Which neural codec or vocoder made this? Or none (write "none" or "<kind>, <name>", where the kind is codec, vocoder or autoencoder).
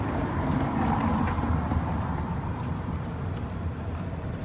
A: vocoder, BigVGAN v2